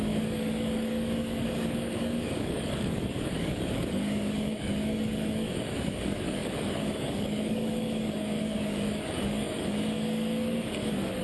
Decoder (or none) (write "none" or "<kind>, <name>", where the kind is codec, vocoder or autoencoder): codec, DAC